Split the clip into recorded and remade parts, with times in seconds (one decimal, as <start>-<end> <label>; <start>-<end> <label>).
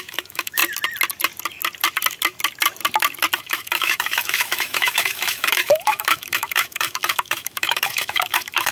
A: 0.0-0.6 remade; 0.6-3.4 recorded; 3.4-8.7 remade